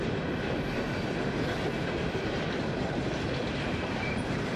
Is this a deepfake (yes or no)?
yes